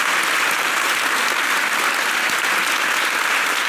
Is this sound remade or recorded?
recorded